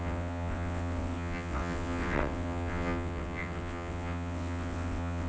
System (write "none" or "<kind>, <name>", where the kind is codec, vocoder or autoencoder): vocoder, WaveNeXt